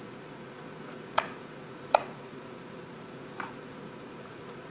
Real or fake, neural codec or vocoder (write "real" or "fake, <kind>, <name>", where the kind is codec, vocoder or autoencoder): fake, vocoder, Vocos